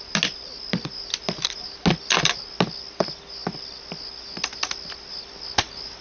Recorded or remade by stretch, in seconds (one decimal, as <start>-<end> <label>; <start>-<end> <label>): 0.0-6.0 recorded